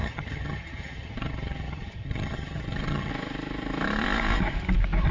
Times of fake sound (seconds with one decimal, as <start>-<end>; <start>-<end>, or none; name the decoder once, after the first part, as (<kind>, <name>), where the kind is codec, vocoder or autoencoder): 0.0-3.1 (vocoder, HiFi-GAN)